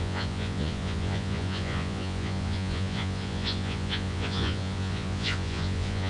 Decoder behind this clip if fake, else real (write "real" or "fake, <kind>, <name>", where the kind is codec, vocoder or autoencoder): fake, vocoder, Vocos